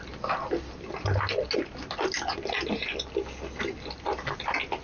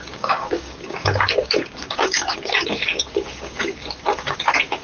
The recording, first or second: first